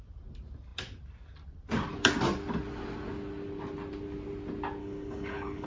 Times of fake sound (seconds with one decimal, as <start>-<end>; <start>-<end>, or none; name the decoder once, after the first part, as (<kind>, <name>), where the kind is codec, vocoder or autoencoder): 4.8-5.7 (codec, HILCodec)